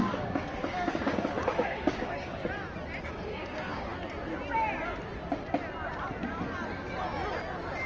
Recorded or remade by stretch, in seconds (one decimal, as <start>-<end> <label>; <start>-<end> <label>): 0.0-2.4 remade; 2.4-3.0 recorded; 3.0-3.9 remade; 3.9-7.9 recorded